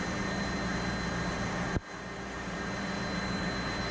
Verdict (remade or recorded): recorded